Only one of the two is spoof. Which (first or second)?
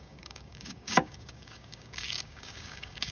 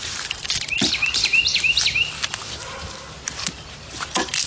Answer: first